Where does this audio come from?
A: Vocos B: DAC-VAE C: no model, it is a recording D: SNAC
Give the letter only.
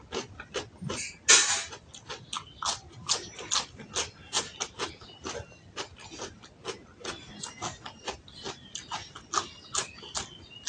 C